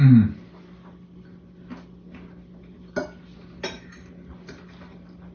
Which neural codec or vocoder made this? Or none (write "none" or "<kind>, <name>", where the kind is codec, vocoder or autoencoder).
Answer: none